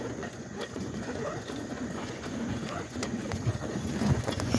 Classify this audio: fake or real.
fake